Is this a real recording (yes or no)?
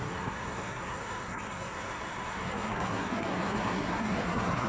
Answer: no